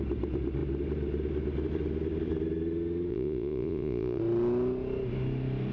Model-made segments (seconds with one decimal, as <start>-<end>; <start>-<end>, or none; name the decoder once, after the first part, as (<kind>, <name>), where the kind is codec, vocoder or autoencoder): 3.1-4.2 (vocoder, Vocos)